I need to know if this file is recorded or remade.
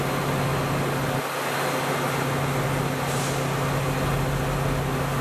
recorded